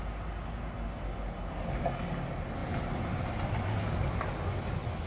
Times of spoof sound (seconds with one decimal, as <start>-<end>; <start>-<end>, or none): none